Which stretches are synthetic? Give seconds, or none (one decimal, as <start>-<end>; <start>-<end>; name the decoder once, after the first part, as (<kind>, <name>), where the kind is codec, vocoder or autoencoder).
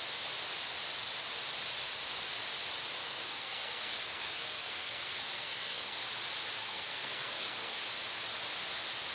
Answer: 3.0-6.0 (codec, SNAC); 6.6-7.8